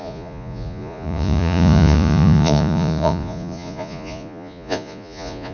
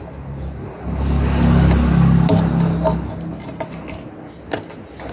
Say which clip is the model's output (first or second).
first